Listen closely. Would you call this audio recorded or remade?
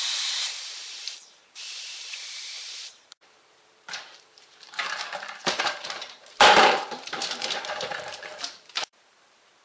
remade